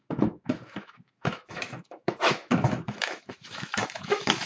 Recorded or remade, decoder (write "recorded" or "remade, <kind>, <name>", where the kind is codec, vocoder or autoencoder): remade, autoencoder, DAC-VAE